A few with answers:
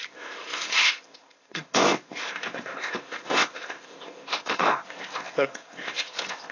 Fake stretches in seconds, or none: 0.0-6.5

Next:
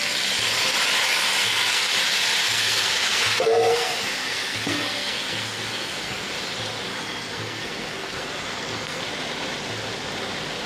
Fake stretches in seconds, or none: 1.4-1.9; 2.4-6.3; 6.9-9.0

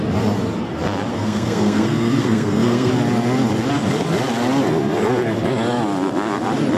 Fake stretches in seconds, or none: 1.1-2.9

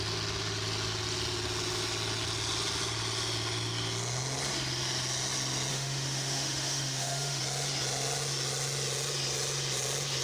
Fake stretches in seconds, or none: 5.7-7.4

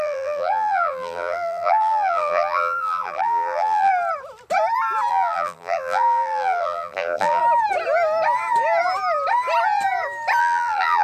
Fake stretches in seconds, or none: 0.0-3.9; 5.1-7.4; 10.4-11.0

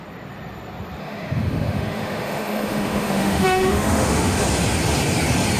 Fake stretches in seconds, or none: 1.0-4.4